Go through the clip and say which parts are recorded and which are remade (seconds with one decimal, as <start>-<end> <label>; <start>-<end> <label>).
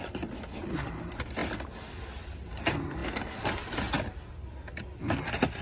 0.0-5.6 recorded